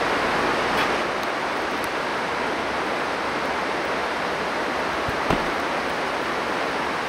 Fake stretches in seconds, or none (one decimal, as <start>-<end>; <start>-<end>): 2.1-3.0; 4.0-5.8